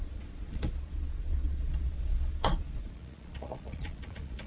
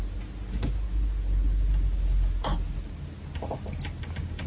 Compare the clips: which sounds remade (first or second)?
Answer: first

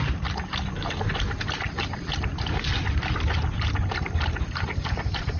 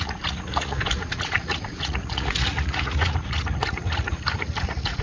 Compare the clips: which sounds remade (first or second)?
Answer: second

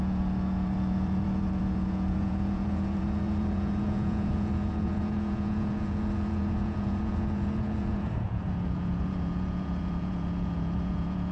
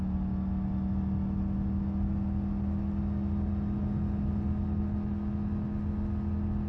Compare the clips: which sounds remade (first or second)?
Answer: first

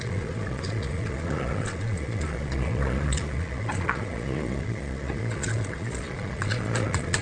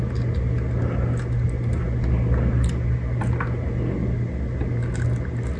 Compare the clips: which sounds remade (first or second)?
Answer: first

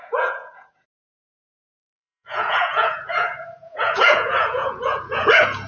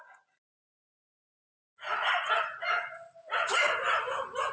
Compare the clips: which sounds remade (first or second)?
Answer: first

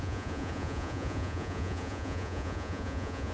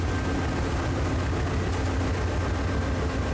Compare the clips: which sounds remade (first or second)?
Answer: first